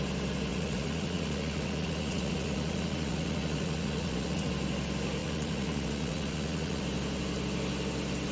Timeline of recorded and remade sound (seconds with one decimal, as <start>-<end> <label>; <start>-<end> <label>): 0.0-0.5 recorded; 0.5-4.5 remade; 4.5-5.2 recorded; 5.2-6.8 remade; 6.8-8.3 recorded